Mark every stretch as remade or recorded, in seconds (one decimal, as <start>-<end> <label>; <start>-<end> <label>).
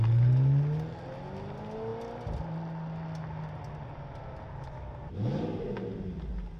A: 0.0-6.6 recorded